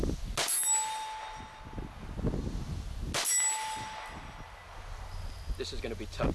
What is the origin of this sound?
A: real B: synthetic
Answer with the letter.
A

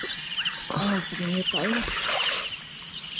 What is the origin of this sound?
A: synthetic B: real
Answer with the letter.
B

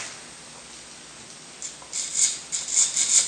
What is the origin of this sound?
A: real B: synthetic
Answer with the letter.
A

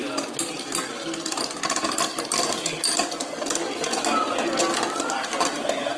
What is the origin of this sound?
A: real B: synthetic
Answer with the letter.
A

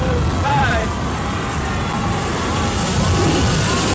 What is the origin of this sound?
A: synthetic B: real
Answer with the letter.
B